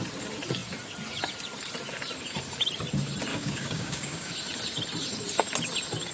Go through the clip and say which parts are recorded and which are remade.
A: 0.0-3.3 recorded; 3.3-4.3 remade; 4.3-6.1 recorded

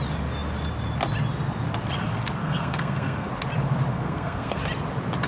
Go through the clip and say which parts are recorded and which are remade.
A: 0.0-2.4 recorded; 2.4-3.3 remade; 3.3-3.9 recorded; 3.9-4.6 remade; 4.6-5.3 recorded

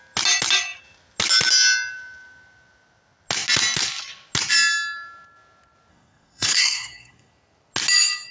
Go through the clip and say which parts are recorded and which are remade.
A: 0.0-5.9 recorded; 5.9-7.3 remade; 7.3-8.3 recorded

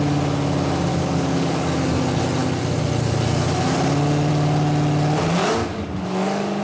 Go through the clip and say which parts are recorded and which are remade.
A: 0.0-0.9 recorded; 0.9-1.8 remade; 1.8-5.4 recorded; 5.4-6.6 remade

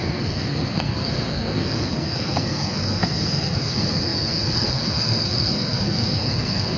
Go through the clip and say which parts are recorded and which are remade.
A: 0.0-6.8 remade

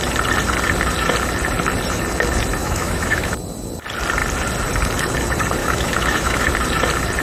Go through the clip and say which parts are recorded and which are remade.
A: 0.0-2.6 recorded; 2.6-3.3 remade; 3.3-5.6 recorded; 5.6-6.5 remade; 6.5-7.2 recorded